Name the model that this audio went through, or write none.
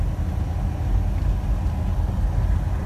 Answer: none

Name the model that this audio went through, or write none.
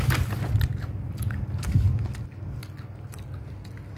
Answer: none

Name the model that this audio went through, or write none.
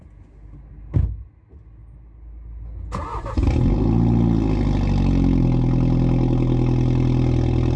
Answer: none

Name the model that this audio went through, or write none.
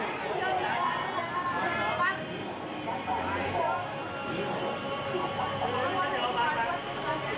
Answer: none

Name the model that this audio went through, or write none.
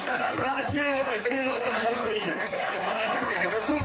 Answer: codec, SNAC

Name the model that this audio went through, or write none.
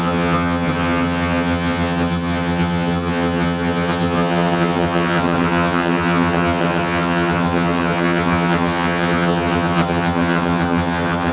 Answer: vocoder, HiFi-GAN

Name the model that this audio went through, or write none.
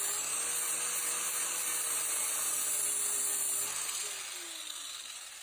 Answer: none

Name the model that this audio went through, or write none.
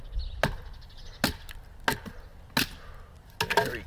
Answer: none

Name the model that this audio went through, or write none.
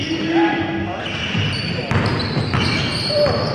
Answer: none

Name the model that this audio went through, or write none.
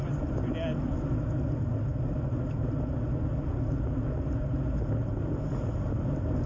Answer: none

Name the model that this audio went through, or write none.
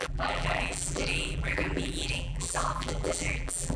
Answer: vocoder, BigVGAN v2